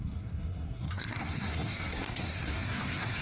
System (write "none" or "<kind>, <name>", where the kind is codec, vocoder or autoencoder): codec, SNAC